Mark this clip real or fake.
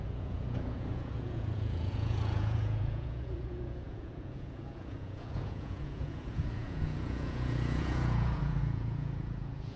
fake